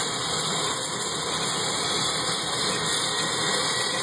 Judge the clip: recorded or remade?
recorded